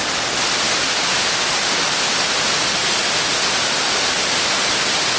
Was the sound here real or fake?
real